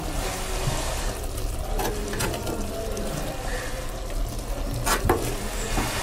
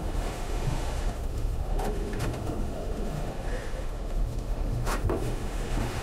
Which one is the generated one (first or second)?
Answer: second